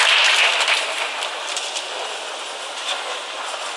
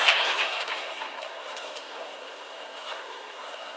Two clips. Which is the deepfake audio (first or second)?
second